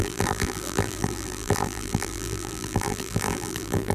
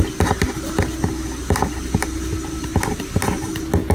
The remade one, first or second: first